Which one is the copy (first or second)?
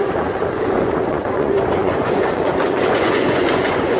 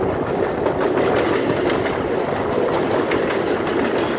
first